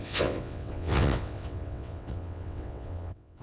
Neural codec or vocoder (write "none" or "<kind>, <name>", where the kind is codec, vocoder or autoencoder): vocoder, WaveNeXt